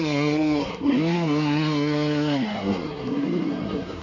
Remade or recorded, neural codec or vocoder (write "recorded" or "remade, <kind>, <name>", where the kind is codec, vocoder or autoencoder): remade, codec, SNAC